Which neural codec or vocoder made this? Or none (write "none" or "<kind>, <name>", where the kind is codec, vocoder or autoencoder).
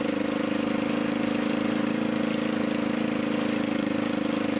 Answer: none